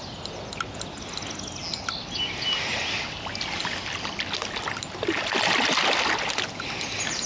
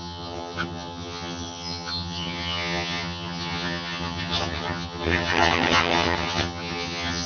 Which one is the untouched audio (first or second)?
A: first